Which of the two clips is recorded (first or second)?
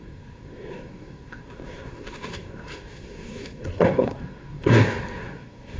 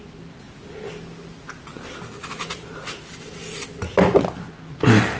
second